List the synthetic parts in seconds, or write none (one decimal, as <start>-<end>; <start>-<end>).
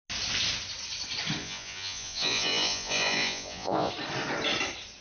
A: 1.4-3.9